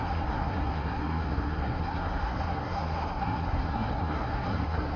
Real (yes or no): no